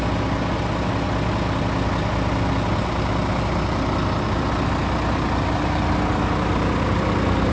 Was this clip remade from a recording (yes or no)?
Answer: no